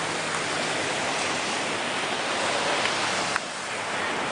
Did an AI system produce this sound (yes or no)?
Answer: no